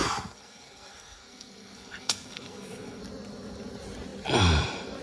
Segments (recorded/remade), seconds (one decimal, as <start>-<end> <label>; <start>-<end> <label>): 0.0-3.0 remade; 3.0-5.0 recorded